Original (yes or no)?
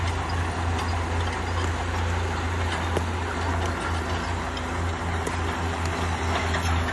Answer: yes